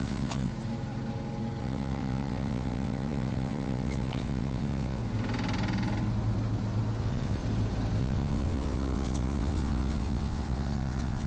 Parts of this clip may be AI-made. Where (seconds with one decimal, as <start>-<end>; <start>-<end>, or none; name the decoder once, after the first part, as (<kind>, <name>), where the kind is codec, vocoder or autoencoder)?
0.0-0.5 (vocoder, WaveNeXt); 1.6-5.0; 7.0-7.4; 8.0-11.3